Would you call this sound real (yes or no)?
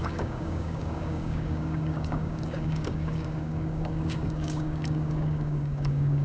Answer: no